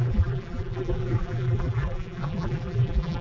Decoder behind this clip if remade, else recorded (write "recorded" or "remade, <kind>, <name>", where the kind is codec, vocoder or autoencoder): remade, vocoder, BigVGAN v2